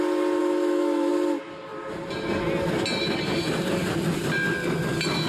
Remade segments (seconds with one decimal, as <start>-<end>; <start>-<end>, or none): 0.4-1.1